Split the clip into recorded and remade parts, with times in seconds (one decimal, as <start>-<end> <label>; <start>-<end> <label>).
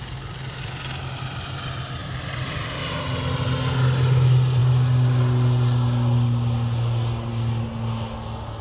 0.0-2.0 recorded; 2.0-2.8 remade; 2.8-8.6 recorded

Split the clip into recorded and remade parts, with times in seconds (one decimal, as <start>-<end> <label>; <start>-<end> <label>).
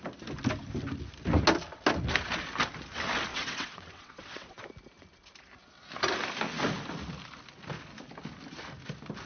0.0-3.3 recorded; 3.3-4.6 remade; 4.6-9.3 recorded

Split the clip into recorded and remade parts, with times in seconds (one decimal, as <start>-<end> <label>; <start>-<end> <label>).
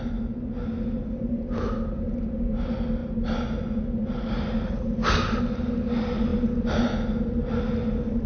0.0-8.3 recorded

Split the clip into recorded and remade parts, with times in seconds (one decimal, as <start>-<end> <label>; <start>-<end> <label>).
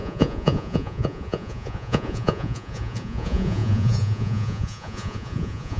0.0-5.8 remade